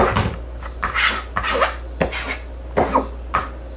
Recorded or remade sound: recorded